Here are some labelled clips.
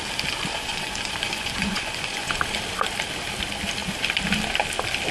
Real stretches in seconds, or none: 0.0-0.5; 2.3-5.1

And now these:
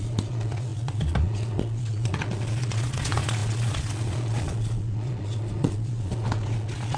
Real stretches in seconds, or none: none

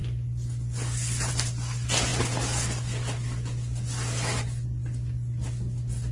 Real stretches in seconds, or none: 0.0-6.1

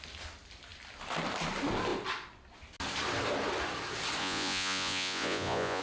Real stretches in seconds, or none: 0.0-4.2

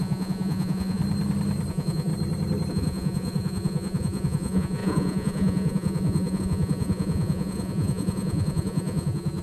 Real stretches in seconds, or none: 1.0-1.7; 2.1-2.7

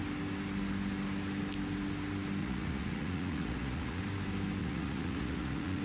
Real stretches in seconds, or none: 0.0-2.4; 4.0-4.6

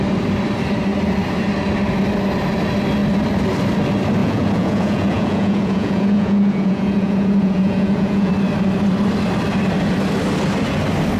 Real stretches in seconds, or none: 0.0-4.2; 8.3-11.2